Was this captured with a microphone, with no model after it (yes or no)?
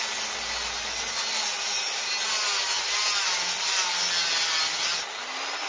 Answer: yes